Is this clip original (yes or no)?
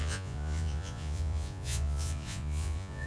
no